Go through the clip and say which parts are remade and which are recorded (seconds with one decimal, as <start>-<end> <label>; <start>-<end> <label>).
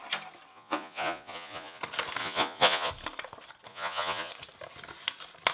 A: 0.0-0.5 recorded; 0.5-1.8 remade; 1.8-2.2 recorded; 2.2-2.9 remade; 2.9-3.7 recorded; 3.7-4.3 remade; 4.3-5.5 recorded